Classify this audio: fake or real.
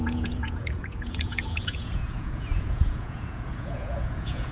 fake